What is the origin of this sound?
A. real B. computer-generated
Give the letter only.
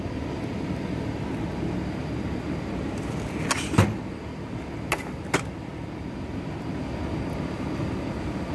A